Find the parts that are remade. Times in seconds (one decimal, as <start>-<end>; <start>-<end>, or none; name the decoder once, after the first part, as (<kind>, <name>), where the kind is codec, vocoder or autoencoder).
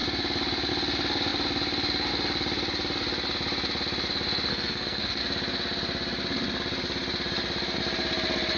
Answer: 4.5-5.2 (codec, SNAC)